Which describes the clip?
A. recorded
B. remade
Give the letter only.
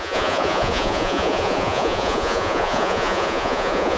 B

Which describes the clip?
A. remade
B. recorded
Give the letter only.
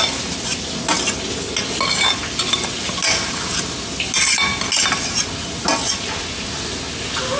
B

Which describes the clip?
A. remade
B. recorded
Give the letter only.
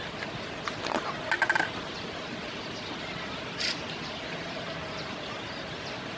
B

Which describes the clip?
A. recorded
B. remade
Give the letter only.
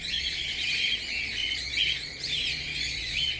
B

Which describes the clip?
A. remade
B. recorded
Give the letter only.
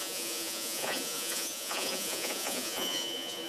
A